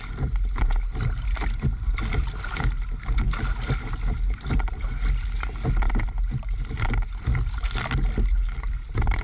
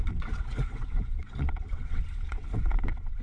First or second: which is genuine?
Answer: first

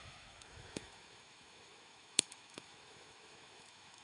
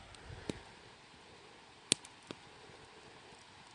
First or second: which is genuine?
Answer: second